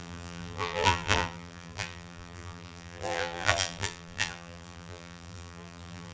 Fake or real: fake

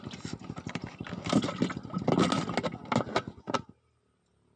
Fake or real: real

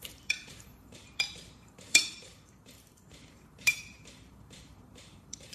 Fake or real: fake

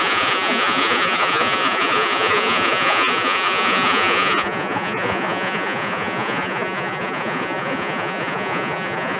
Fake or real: fake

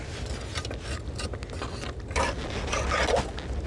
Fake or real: real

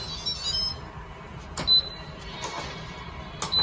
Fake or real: real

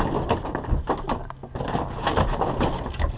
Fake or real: real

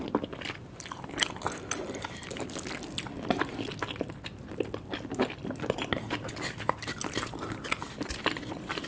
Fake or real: real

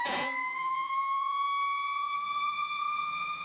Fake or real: fake